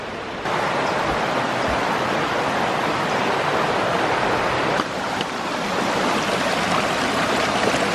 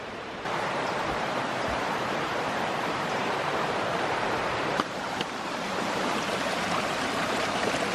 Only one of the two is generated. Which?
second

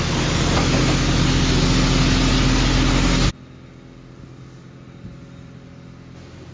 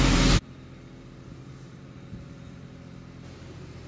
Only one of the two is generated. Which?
second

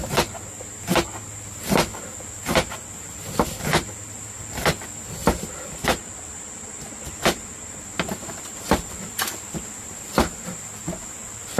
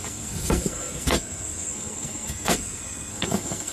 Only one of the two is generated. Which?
second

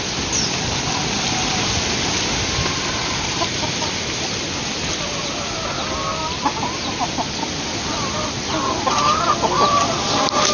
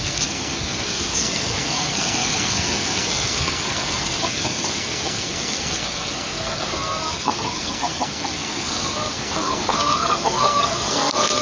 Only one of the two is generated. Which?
second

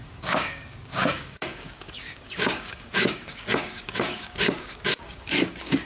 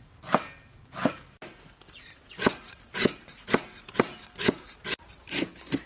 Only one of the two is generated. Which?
first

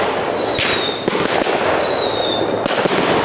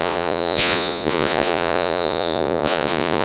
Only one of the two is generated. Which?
second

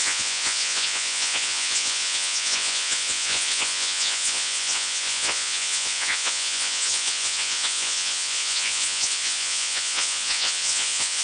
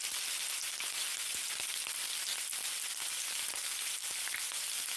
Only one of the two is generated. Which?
first